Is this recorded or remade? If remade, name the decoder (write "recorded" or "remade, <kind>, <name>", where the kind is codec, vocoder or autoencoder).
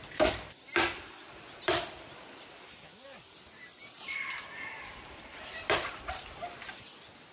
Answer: remade, vocoder, BigVGAN v2